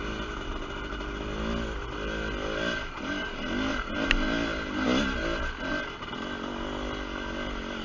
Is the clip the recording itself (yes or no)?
yes